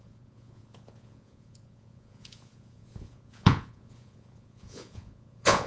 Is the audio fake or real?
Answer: fake